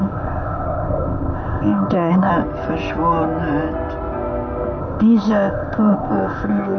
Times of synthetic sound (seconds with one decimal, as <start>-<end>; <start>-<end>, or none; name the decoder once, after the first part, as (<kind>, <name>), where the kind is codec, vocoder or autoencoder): 0.0-2.3 (codec, ZipCodec); 4.8-6.8